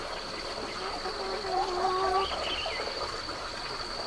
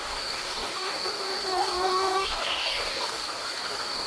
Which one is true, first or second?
first